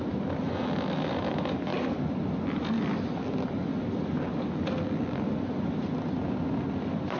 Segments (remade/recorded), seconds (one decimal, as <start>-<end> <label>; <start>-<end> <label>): 0.0-1.7 recorded; 1.7-2.8 remade; 2.8-7.2 recorded

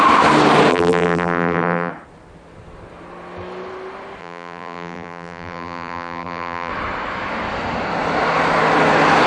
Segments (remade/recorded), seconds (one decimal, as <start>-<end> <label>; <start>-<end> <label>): 0.0-0.7 recorded; 0.7-1.9 remade; 1.9-4.2 recorded; 4.2-6.7 remade; 6.7-9.3 recorded

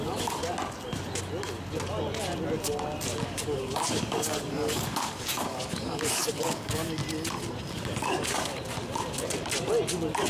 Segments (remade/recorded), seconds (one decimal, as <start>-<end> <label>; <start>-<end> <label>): 0.0-0.4 remade; 0.4-3.2 recorded; 3.2-7.0 remade; 7.0-7.7 recorded; 7.7-8.5 remade; 8.5-10.3 recorded

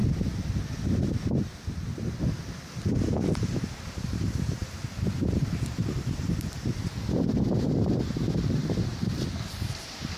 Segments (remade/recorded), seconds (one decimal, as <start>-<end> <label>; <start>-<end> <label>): 0.0-3.9 recorded; 3.9-8.6 remade; 8.6-9.5 recorded; 9.5-10.2 remade

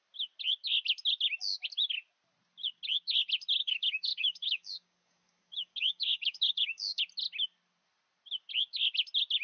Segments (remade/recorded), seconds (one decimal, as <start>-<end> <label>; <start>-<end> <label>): 0.0-3.6 recorded; 3.6-7.0 remade; 7.0-9.4 recorded